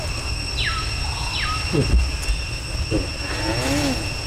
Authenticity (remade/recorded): recorded